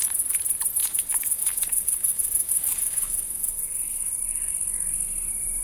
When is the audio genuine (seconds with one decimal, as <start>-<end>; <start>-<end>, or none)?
0.0-0.8; 4.2-5.6